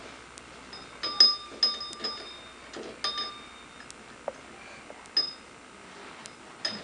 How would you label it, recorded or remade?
recorded